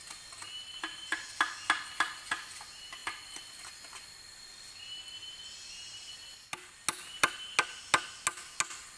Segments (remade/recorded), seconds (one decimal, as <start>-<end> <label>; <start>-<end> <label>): 0.0-9.0 recorded